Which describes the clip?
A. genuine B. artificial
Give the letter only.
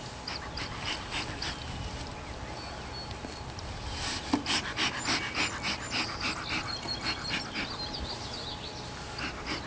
A